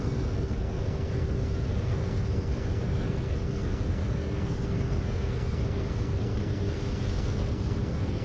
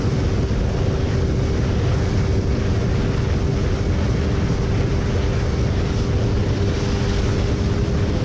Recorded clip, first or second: second